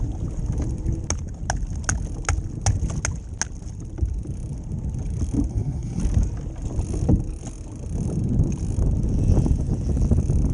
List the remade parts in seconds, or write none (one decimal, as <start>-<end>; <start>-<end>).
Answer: 5.5-6.0